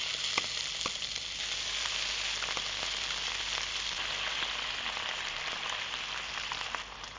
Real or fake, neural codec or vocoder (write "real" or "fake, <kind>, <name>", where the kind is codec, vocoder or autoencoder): real